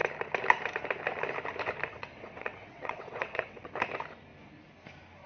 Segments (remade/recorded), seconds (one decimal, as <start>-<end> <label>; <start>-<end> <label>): 0.0-1.9 recorded; 1.9-3.7 remade; 3.7-5.3 recorded